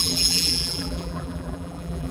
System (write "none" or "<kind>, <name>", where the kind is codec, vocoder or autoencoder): vocoder, BigVGAN v2